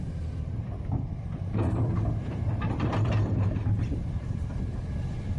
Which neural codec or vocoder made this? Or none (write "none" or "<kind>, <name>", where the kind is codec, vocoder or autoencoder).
vocoder, BigVGAN v2